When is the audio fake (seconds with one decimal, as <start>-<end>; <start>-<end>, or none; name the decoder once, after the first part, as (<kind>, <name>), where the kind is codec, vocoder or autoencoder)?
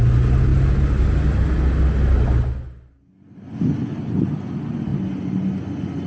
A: none